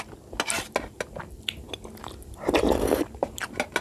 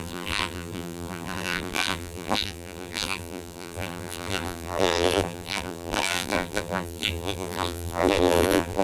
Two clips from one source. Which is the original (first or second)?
first